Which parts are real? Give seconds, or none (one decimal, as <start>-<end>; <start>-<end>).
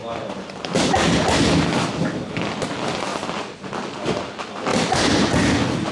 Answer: 1.2-4.7